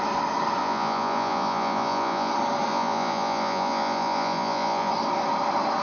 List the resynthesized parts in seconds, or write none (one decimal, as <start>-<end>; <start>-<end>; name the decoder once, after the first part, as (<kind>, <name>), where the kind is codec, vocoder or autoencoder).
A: 0.6-2.3 (vocoder, Vocos); 2.7-4.9